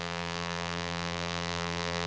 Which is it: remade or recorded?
remade